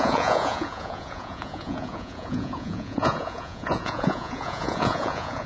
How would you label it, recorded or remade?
remade